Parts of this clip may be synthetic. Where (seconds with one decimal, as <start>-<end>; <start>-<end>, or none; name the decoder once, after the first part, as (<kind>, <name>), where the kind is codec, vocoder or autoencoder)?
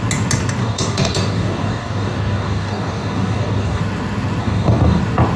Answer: 0.6-3.8 (codec, DAC); 4.4-5.0